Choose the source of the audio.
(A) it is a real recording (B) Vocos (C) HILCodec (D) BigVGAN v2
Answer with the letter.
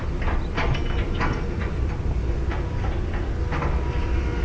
A